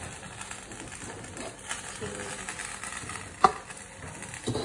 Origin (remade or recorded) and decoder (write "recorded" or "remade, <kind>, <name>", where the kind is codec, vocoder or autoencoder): recorded